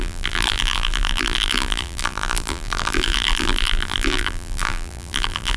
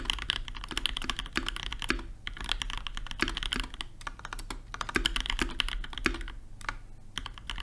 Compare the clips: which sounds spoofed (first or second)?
first